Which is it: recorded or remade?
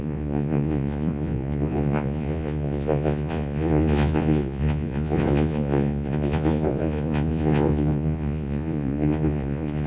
remade